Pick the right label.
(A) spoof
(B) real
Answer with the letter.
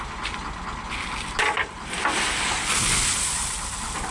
B